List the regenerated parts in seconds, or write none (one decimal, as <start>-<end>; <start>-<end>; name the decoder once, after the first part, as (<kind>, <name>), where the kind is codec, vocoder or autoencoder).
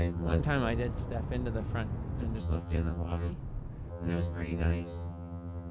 0.0-0.4 (vocoder, HiFi-GAN); 2.4-3.3; 3.9-5.7